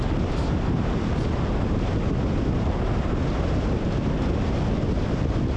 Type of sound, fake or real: real